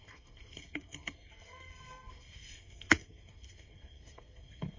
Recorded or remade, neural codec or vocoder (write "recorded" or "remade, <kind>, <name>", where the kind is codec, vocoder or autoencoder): remade, codec, SNAC